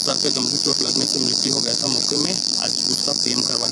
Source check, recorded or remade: remade